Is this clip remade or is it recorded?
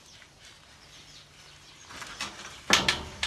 recorded